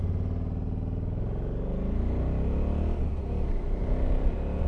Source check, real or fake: real